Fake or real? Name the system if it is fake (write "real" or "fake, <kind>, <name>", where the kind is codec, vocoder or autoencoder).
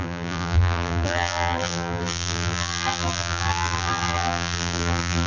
fake, vocoder, BigVGAN v2